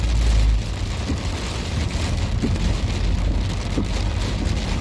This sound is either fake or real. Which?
real